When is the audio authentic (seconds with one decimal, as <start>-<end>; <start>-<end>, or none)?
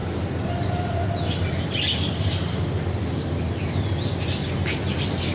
0.0-5.3